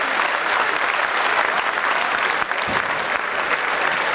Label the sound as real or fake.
real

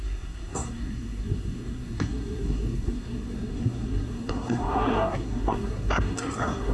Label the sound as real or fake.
fake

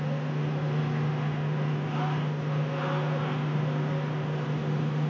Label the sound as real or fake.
real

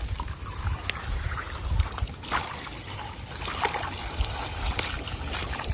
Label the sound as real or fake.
real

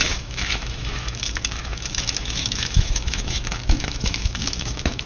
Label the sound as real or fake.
fake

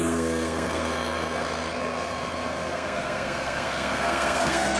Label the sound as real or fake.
fake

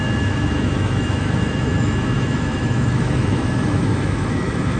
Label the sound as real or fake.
fake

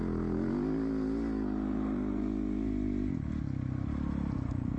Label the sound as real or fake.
real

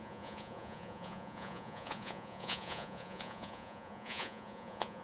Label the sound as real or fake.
fake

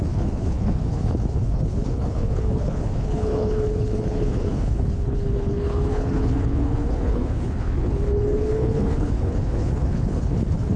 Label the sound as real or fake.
fake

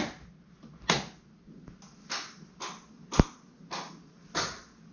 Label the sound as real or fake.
real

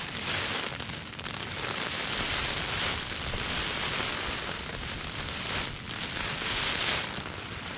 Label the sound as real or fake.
real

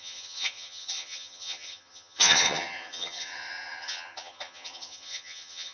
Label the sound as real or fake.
fake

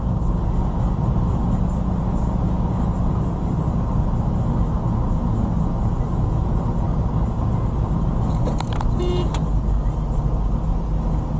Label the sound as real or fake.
real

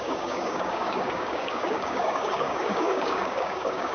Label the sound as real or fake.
fake